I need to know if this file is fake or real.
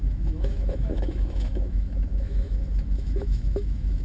fake